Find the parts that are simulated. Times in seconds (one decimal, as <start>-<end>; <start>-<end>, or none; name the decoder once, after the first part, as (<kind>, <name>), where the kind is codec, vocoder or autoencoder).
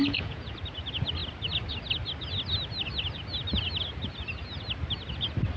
0.0-0.5 (vocoder, Vocos)